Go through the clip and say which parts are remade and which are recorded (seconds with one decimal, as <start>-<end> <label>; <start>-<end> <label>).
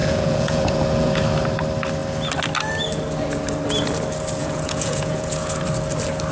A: 0.0-1.1 remade; 1.1-4.4 recorded; 4.4-5.6 remade; 5.6-6.3 recorded